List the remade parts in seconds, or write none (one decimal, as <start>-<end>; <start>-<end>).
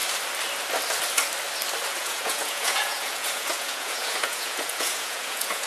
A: 1.9-5.7